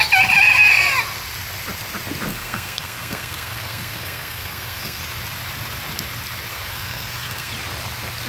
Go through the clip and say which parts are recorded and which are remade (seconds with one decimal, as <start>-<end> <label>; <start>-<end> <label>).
0.0-2.3 recorded; 2.3-5.0 remade; 5.0-6.5 recorded; 6.5-7.5 remade; 7.5-8.3 recorded